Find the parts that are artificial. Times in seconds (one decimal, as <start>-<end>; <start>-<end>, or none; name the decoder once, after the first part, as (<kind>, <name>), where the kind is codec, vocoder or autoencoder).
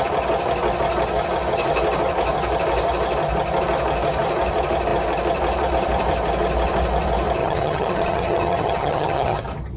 7.4-9.4 (vocoder, HiFi-GAN)